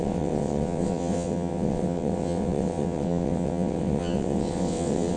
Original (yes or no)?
no